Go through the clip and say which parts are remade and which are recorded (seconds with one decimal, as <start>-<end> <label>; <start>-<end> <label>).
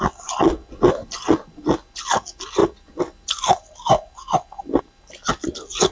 0.0-5.9 recorded